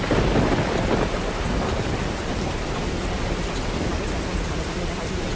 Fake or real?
real